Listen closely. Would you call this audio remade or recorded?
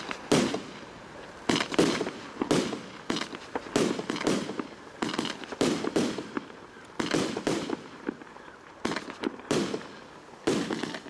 recorded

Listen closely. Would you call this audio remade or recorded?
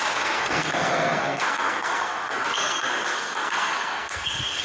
remade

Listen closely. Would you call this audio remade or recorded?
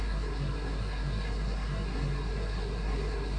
remade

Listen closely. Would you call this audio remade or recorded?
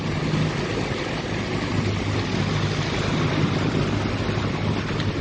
recorded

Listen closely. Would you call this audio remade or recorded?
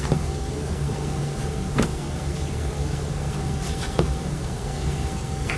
remade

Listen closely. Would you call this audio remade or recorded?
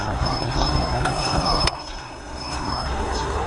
remade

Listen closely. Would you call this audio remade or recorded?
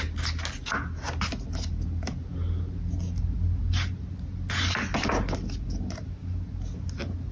recorded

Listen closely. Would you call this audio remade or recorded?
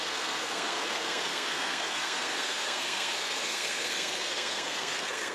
remade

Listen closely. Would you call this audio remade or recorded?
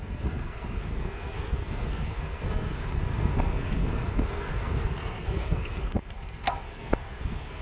remade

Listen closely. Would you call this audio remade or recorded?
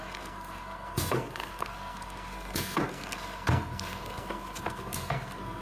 remade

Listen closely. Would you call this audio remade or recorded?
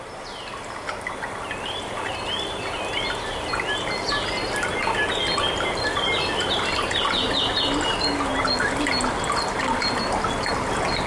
recorded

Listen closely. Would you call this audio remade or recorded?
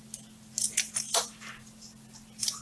recorded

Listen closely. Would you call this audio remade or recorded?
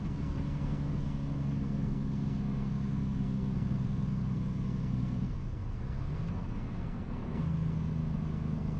remade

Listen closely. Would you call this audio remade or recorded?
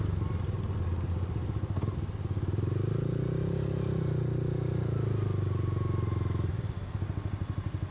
recorded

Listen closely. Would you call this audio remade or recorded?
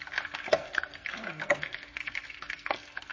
remade